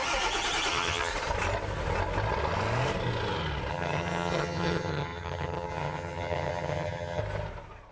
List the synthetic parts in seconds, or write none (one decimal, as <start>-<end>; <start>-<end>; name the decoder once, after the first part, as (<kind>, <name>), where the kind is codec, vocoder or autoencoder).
0.7-1.1 (vocoder, HiFi-GAN); 3.7-7.2